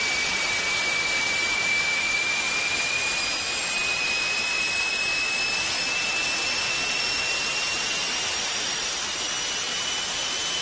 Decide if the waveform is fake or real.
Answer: fake